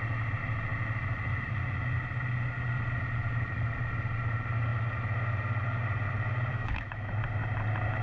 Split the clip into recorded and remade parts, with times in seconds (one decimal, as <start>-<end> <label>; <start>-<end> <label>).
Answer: 0.0-6.5 recorded; 6.5-7.1 remade; 7.1-8.0 recorded